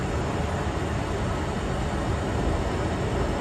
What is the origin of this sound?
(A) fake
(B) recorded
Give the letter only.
B